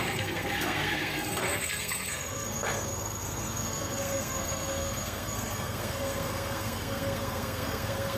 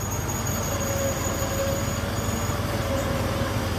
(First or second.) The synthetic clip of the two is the first